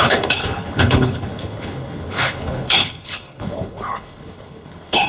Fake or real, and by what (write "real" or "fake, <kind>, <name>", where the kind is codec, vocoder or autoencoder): fake, codec, HILCodec